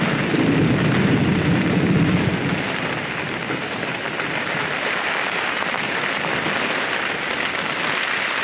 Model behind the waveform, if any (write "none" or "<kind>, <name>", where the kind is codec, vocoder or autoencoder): none